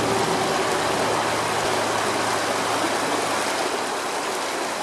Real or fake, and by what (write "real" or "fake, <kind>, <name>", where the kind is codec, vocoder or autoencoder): real